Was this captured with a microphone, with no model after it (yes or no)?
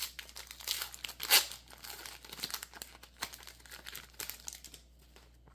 yes